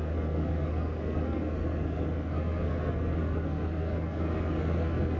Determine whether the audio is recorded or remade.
remade